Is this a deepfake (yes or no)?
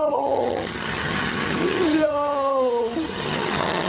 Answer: yes